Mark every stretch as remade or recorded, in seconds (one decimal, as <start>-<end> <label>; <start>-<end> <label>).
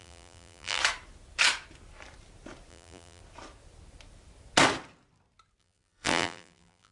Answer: 0.0-0.8 remade; 0.8-2.7 recorded; 2.7-3.2 remade; 3.2-5.6 recorded; 5.6-6.9 remade